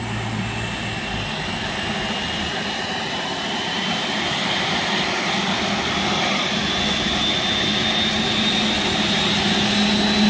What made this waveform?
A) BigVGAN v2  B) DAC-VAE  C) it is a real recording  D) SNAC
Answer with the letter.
C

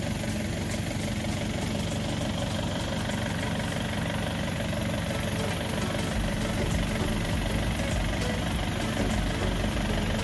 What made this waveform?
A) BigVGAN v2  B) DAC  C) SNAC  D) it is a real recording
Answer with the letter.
D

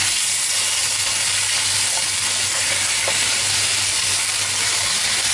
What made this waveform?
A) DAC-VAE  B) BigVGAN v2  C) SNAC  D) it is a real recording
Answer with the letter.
D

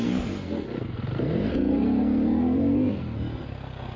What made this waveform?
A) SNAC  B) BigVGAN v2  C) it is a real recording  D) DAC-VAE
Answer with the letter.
A